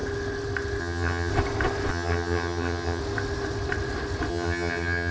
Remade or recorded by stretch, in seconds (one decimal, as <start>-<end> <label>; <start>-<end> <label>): 0.0-0.8 recorded; 0.8-1.3 remade; 1.3-1.9 recorded; 1.9-3.0 remade; 3.0-4.3 recorded; 4.3-5.1 remade